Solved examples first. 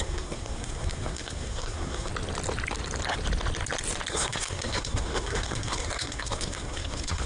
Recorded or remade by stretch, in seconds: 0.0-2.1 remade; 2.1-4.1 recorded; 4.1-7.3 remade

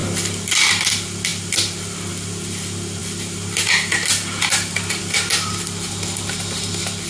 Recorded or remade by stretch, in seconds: 0.0-7.1 recorded